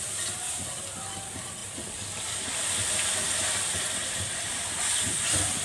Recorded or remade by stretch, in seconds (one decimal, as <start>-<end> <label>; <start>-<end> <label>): 0.0-5.6 recorded